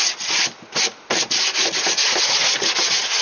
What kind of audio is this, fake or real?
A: real